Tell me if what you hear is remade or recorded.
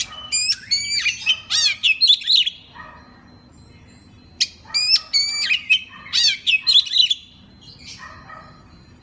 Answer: recorded